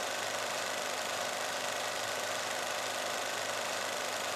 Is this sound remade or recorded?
remade